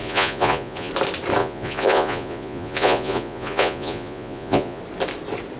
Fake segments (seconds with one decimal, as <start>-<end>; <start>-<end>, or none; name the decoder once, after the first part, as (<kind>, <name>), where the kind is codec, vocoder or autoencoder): 0.0-0.9 (vocoder, Vocos); 1.4-4.8